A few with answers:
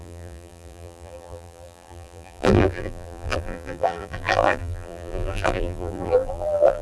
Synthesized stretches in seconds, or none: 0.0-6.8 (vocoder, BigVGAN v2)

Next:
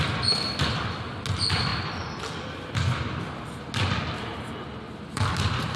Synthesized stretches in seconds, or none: none

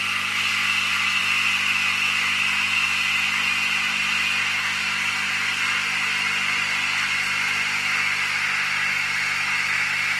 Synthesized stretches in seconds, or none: none

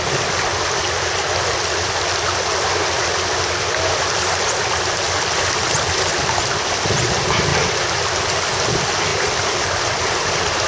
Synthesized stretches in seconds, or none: none

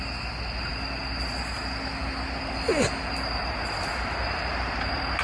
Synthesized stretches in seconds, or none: none